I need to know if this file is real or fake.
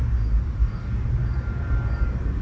real